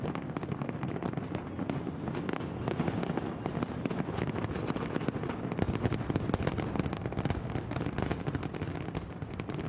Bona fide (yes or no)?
yes